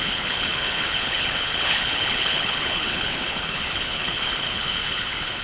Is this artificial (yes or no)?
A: yes